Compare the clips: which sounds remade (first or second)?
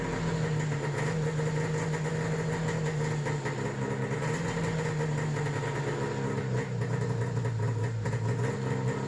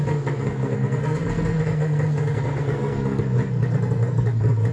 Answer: second